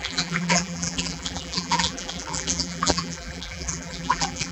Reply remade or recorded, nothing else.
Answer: remade